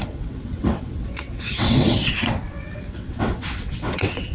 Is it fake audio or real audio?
fake